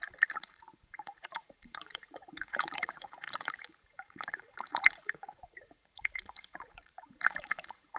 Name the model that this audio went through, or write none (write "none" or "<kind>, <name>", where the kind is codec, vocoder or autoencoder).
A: vocoder, Vocos